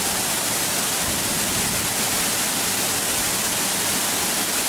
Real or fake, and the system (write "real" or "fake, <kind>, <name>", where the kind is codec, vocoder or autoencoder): real